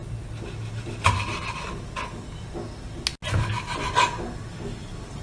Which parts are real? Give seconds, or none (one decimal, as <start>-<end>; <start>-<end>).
0.0-5.2